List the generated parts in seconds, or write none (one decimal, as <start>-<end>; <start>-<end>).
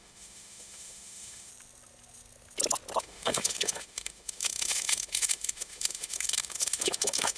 0.0-1.5; 3.0-7.4